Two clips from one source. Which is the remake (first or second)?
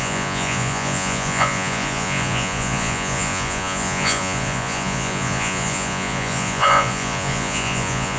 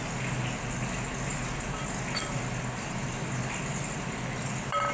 first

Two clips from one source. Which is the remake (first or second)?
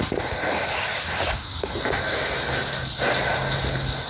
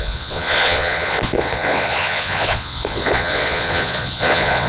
second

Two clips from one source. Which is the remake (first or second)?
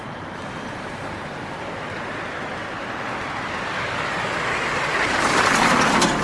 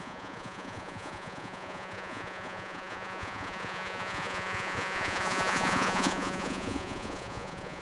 second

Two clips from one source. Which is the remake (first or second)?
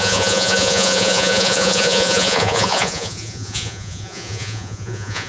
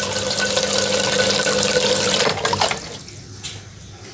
first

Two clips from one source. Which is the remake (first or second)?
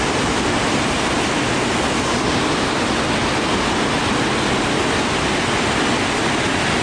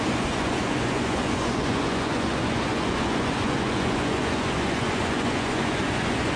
second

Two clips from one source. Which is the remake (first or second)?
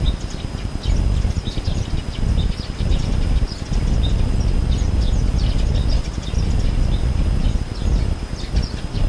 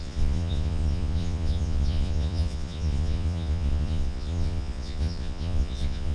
second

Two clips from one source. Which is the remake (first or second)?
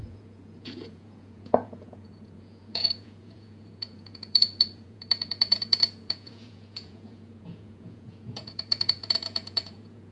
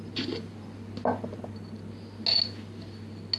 first